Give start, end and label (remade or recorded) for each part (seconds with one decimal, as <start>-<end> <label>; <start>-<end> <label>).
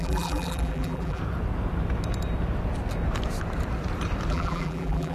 0.0-1.2 remade; 1.2-4.3 recorded; 4.3-5.1 remade